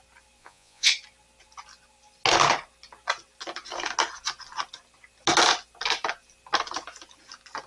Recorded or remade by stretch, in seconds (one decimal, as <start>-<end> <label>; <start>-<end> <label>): 0.0-0.4 recorded; 0.4-0.9 remade; 0.9-7.7 recorded